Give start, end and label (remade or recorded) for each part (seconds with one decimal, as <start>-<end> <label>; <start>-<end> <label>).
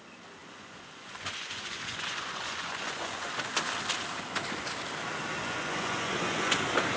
0.0-0.4 recorded; 0.4-3.3 remade; 3.3-5.4 recorded; 5.4-6.6 remade; 6.6-7.0 recorded